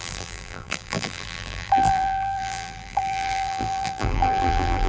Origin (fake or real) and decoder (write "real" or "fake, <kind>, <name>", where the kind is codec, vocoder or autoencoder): fake, vocoder, BigVGAN v2